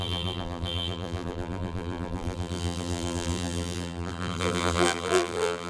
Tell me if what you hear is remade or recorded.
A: remade